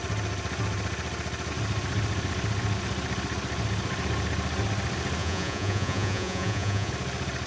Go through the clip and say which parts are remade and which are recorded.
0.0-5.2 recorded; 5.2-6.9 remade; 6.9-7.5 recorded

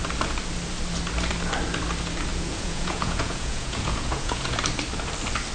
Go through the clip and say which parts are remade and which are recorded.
0.0-2.3 recorded; 2.3-4.6 remade; 4.6-5.5 recorded